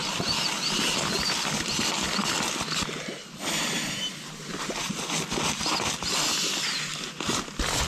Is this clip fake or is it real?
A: real